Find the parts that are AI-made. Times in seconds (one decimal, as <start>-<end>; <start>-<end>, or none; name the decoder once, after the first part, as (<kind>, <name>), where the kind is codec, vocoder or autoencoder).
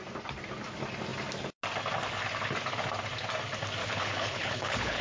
3.8-5.0 (codec, HILCodec)